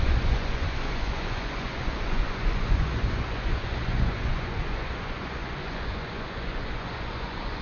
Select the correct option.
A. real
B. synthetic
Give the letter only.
B